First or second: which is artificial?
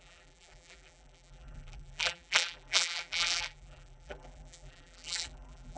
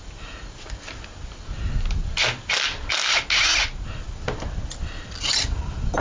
first